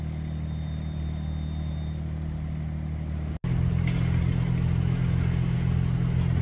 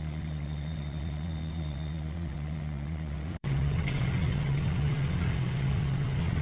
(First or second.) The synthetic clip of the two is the second